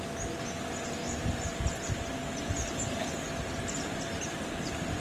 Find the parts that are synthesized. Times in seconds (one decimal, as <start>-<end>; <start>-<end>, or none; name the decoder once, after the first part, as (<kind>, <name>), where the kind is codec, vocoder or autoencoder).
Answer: none